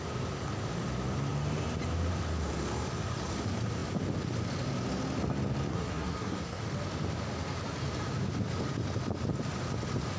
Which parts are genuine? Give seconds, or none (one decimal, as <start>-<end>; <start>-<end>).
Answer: 0.0-5.7; 6.6-10.2